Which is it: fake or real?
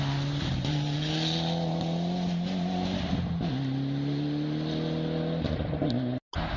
real